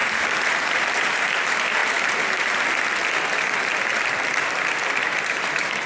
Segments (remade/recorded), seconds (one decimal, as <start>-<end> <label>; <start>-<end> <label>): 0.0-1.8 remade; 1.8-4.8 recorded; 4.8-5.9 remade

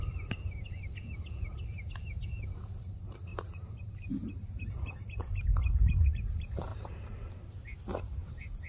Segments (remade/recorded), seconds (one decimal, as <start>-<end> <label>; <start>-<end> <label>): 0.0-6.7 remade; 6.7-8.0 recorded; 8.0-8.7 remade

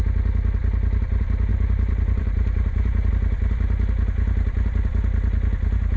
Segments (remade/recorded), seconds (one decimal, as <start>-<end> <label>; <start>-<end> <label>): 0.0-1.5 recorded; 1.5-3.1 remade; 3.1-6.0 recorded

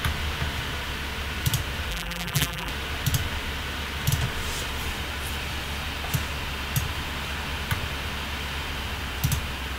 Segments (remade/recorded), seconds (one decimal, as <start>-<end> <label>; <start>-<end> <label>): 0.0-1.9 recorded; 1.9-2.7 remade; 2.7-9.8 recorded